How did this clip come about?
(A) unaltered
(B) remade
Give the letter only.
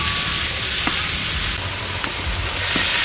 A